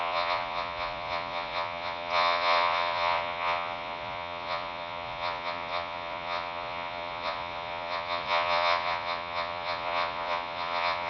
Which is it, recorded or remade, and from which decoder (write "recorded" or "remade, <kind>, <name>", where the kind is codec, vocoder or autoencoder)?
remade, vocoder, Vocos